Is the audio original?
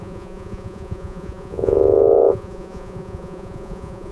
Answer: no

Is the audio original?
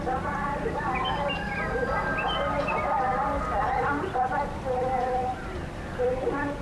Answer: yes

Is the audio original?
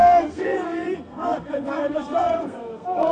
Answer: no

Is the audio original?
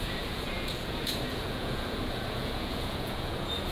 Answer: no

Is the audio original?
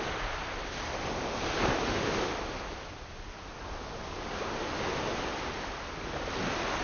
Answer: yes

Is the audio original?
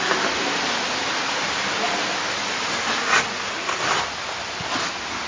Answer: yes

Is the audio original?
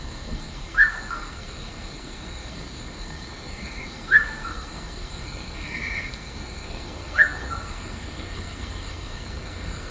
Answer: no